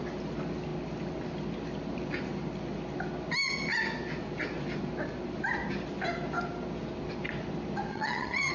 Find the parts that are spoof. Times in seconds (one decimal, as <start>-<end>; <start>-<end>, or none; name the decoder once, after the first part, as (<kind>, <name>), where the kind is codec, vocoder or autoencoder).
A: 7.9-8.5 (vocoder, HiFi-GAN)